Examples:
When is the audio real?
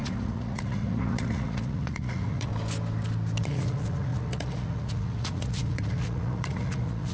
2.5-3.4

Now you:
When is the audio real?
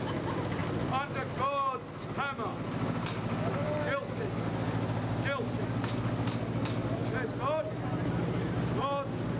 0.0-9.4